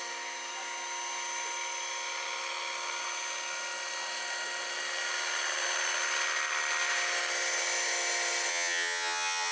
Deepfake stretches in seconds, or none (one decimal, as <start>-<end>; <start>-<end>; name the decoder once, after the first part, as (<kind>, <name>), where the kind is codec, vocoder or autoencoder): 8.5-9.5 (vocoder, HiFi-GAN)